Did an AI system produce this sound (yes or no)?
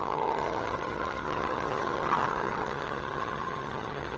yes